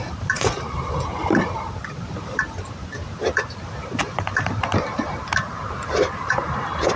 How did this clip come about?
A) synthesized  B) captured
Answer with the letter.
A